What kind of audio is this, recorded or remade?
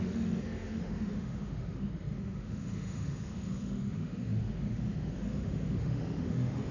remade